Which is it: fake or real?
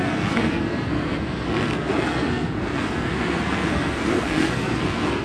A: fake